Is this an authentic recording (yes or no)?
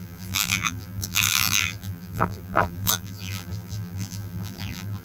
no